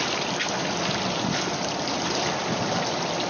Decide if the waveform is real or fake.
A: real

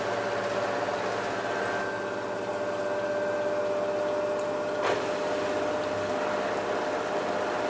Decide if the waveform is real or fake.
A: real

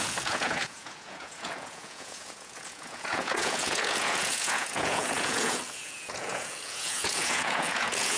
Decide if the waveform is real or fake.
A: fake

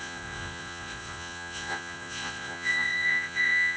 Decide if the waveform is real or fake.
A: fake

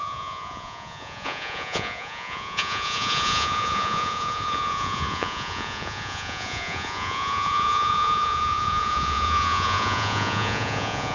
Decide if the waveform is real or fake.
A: fake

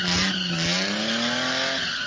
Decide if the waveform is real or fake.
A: real